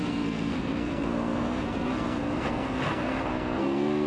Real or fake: fake